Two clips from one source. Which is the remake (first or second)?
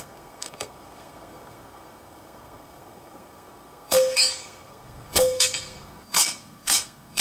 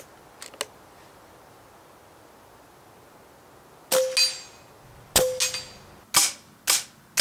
first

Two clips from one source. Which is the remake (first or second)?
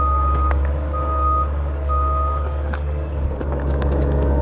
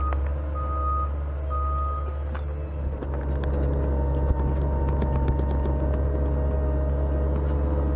first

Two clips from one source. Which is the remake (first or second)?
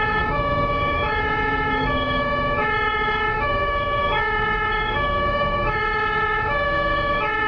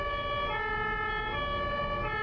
first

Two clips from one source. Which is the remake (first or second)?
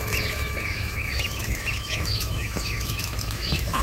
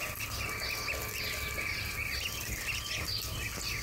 first